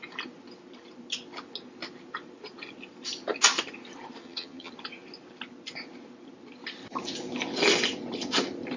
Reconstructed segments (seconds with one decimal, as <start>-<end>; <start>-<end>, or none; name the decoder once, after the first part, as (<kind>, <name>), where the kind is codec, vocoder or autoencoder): 4.2-4.7 (vocoder, HiFi-GAN)